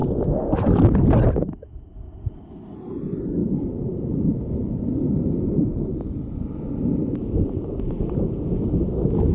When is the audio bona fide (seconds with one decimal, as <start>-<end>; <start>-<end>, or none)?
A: 0.0-9.3

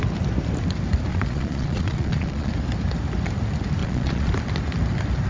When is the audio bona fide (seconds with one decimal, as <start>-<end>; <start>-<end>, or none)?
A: 0.0-1.1; 2.5-3.8; 4.3-5.3

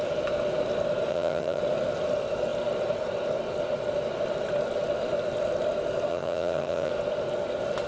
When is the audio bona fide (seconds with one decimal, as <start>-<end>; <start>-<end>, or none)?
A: 0.0-1.1; 1.6-6.1; 6.9-7.9

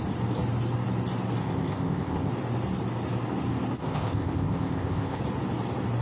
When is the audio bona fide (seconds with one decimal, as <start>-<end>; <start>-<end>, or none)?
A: 0.0-1.4; 2.3-3.8; 5.2-6.0

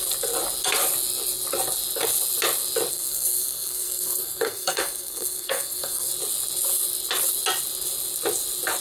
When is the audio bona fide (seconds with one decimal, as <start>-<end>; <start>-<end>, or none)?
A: 0.0-2.9; 6.1-8.8

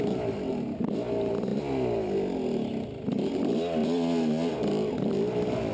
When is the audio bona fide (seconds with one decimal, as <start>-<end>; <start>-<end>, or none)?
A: 0.0-3.8; 4.9-5.7